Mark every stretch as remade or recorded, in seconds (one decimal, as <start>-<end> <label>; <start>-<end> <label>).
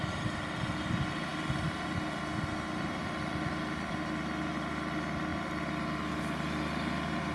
0.0-7.3 recorded